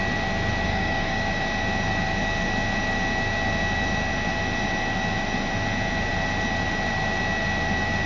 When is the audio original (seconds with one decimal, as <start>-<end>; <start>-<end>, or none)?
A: 0.0-0.7; 1.3-8.1